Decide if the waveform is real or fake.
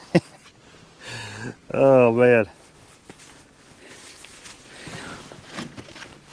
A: real